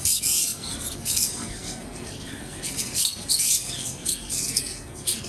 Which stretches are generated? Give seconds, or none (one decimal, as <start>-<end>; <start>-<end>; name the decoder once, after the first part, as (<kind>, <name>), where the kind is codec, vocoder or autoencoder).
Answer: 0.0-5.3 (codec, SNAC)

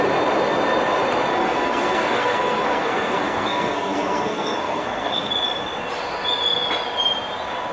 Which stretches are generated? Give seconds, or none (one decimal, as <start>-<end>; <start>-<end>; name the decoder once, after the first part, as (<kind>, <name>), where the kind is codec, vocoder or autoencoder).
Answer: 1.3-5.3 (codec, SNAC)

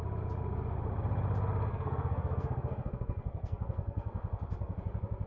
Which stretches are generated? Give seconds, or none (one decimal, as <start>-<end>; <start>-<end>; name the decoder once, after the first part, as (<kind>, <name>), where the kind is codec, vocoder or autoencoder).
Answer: 1.7-4.8 (codec, SNAC)